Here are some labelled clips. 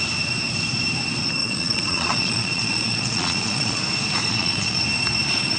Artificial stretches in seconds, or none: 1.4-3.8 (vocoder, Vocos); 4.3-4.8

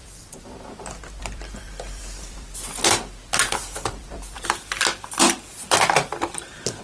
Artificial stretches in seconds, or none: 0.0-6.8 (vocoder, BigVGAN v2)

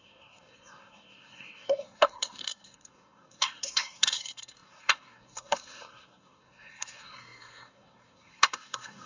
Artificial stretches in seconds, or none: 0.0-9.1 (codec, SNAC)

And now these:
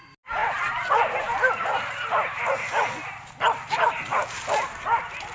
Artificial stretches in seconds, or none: none

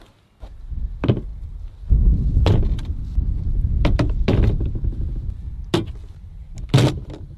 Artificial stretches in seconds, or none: none

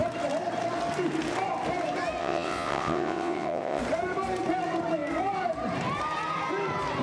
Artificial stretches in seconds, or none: 2.2-3.8 (vocoder, WaveNeXt)

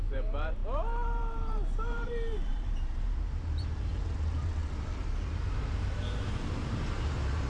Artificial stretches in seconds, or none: 0.0-7.5 (vocoder, BigVGAN v2)